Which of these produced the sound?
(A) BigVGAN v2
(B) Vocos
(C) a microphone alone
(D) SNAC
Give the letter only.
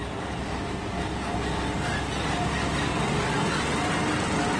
C